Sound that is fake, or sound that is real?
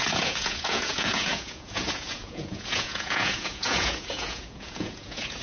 fake